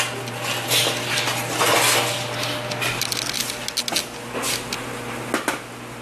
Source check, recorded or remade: recorded